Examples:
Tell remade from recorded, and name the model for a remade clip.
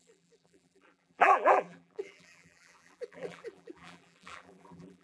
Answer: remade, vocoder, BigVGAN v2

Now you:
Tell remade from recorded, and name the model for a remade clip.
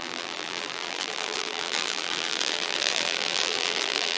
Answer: remade, vocoder, BigVGAN v2